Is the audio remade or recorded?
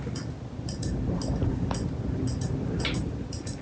recorded